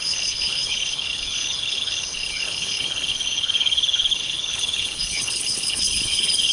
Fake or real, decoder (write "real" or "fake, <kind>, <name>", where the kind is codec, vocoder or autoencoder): fake, codec, HILCodec